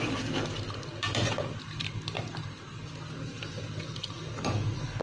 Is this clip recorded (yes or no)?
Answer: yes